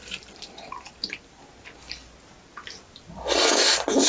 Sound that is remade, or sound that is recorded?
recorded